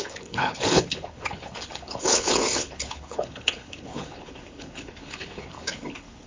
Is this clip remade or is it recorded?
remade